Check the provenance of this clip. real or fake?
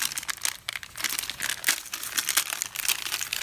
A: real